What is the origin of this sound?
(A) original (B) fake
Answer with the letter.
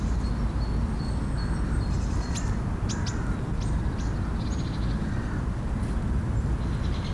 A